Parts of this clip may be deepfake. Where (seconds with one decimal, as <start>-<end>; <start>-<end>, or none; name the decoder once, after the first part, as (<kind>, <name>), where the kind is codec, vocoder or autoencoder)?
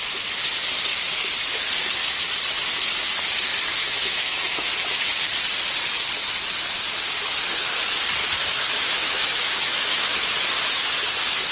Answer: 3.7-4.7 (autoencoder, DAC-VAE); 8.2-10.3